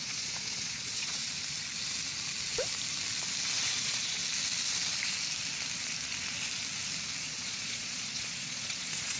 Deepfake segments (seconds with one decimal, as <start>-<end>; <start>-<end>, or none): 0.0-1.2; 3.7-4.2; 7.2-9.2